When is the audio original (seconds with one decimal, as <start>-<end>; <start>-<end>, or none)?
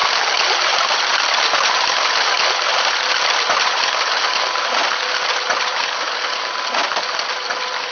0.0-7.9